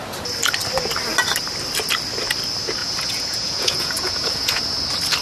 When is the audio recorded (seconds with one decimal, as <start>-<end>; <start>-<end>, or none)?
0.0-2.8; 4.6-5.2